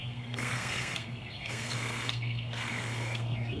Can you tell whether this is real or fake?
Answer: fake